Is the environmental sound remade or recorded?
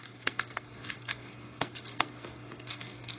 remade